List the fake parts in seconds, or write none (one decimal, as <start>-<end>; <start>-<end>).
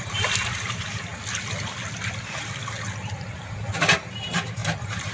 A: 0.0-1.1; 3.3-5.1